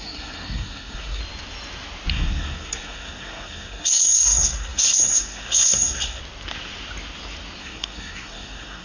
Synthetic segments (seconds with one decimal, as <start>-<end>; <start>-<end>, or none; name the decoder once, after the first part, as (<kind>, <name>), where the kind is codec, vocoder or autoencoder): 0.0-1.2 (codec, SNAC); 2.1-6.2; 7.6-8.8